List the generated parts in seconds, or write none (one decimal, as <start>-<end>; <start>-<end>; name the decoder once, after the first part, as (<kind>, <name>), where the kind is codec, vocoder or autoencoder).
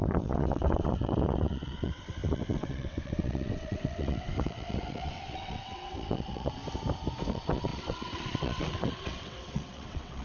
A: 0.0-6.6 (vocoder, WaveNeXt); 7.3-10.2